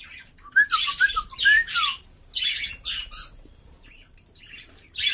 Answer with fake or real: fake